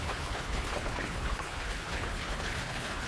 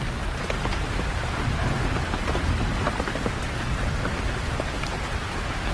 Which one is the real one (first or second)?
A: second